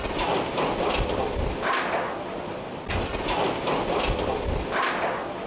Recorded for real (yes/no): yes